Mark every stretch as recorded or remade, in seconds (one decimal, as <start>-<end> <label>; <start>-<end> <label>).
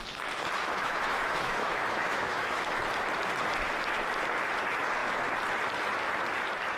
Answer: 0.0-0.6 recorded; 0.6-2.7 remade; 2.7-6.8 recorded